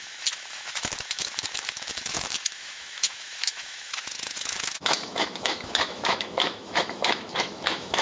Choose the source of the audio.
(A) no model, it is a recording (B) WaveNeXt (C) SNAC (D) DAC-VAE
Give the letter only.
D